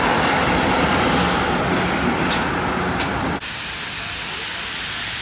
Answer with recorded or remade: recorded